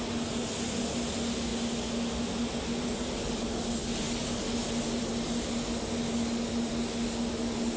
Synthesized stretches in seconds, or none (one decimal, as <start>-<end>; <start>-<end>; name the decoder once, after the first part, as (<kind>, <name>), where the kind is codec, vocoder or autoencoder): none